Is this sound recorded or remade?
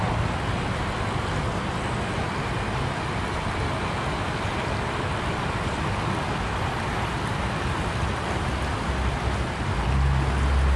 recorded